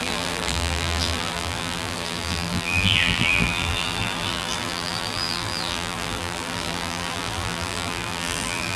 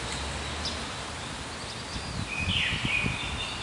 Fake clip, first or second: first